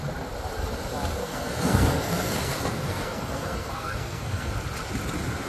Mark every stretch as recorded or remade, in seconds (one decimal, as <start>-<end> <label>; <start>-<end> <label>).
0.0-1.2 recorded; 1.2-4.5 remade; 4.5-5.5 recorded